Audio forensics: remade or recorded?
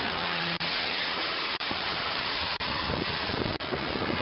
remade